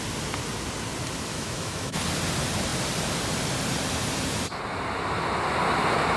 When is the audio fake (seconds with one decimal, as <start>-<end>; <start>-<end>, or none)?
1.3-2.0